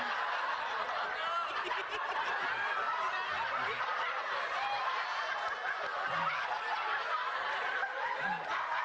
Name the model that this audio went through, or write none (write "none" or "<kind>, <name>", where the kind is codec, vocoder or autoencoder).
none